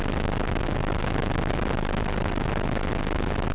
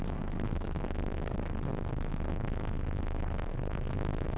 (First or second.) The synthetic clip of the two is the second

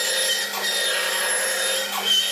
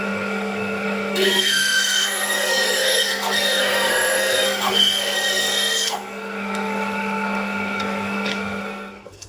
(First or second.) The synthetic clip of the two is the second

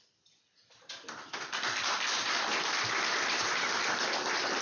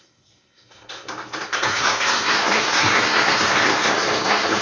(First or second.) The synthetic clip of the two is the second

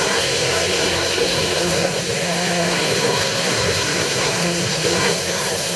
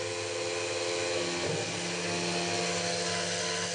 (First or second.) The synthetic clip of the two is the first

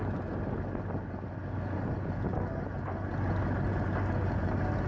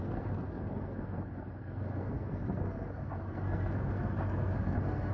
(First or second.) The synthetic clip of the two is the second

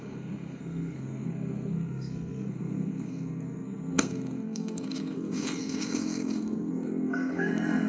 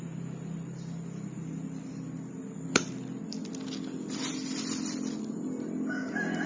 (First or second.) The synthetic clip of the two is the first